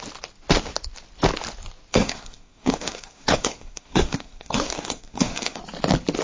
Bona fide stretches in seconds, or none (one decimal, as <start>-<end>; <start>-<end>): 0.0-1.9; 5.6-6.2